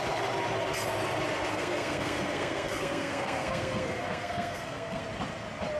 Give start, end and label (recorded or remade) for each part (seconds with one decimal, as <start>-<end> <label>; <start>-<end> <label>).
0.0-1.5 recorded; 1.5-5.0 remade; 5.0-5.8 recorded